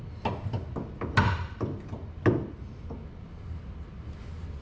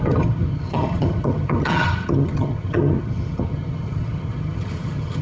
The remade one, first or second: second